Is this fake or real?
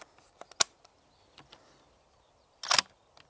real